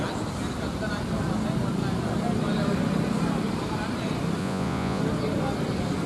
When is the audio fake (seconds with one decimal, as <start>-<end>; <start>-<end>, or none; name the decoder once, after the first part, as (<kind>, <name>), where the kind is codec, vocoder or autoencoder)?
4.4-5.0 (vocoder, Vocos)